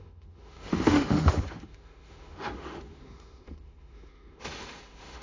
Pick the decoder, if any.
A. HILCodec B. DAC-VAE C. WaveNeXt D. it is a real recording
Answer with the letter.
B